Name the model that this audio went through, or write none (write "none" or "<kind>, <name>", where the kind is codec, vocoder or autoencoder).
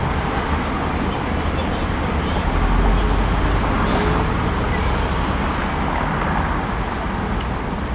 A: none